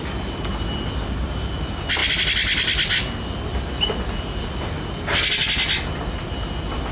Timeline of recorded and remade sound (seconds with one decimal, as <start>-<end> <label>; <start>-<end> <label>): 0.0-6.9 recorded